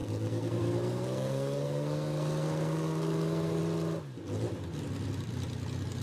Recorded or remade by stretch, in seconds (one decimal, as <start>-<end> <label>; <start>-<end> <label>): 0.0-3.6 remade; 3.6-6.0 recorded